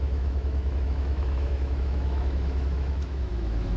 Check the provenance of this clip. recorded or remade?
remade